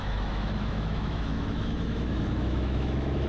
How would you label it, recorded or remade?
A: remade